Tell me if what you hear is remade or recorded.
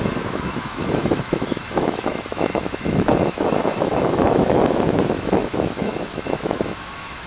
remade